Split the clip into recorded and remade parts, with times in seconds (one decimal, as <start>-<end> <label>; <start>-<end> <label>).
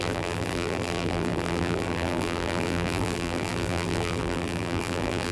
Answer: 0.0-5.3 remade